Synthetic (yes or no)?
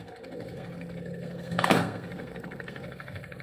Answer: yes